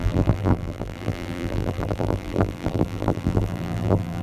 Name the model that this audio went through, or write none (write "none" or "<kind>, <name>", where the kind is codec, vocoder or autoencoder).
vocoder, BigVGAN v2